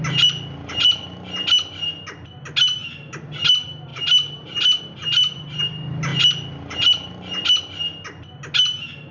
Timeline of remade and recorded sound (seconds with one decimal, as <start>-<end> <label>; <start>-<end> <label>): 0.0-9.1 recorded